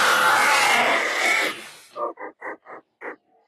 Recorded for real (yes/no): yes